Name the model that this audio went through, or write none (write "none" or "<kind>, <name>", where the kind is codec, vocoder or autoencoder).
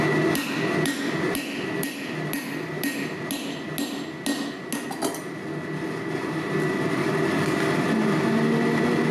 none